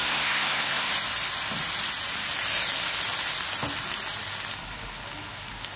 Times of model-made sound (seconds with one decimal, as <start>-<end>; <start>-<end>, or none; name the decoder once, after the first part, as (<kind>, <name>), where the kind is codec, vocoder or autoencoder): 0.0-0.9 (codec, SNAC)